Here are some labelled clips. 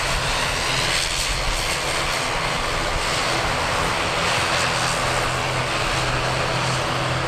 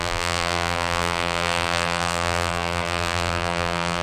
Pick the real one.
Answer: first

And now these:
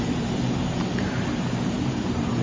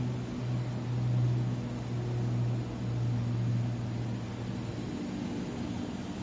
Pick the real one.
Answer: second